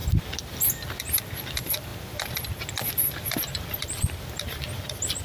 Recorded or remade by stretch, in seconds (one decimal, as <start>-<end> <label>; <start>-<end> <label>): 0.0-5.2 recorded